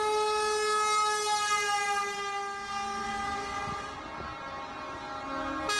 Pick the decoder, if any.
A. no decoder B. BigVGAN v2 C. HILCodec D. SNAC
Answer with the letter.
A